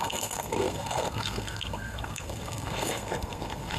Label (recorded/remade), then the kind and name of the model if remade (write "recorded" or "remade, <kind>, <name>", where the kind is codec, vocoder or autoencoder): remade, codec, SNAC